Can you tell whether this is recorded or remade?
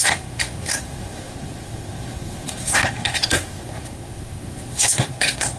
remade